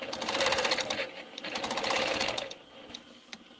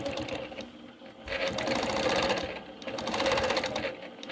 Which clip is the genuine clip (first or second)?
second